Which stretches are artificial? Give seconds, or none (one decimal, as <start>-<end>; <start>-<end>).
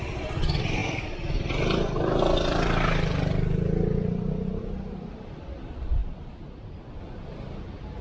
none